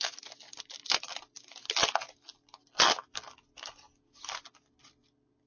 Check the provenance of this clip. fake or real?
real